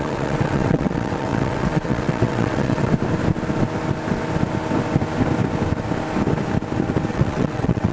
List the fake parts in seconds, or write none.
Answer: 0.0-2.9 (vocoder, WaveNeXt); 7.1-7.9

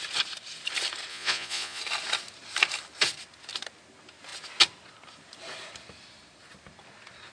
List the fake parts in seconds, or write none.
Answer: 1.1-1.8 (vocoder, Vocos)

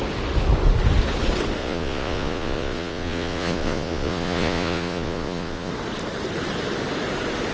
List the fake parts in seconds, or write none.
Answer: 1.6-5.7 (vocoder, Vocos)

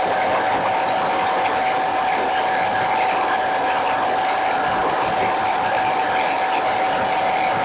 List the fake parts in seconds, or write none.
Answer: 4.8-6.0 (vocoder, BigVGAN v2)